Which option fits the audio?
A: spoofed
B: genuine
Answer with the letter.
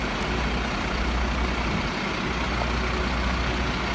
B